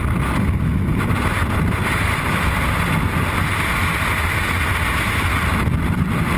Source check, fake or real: real